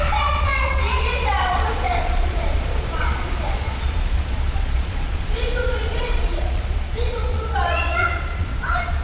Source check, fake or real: fake